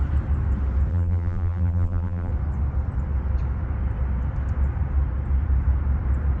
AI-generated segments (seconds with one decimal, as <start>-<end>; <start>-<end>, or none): 0.9-2.3